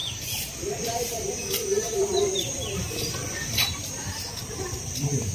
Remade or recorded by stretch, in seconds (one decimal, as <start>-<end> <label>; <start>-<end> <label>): 0.0-0.8 recorded; 0.8-5.3 remade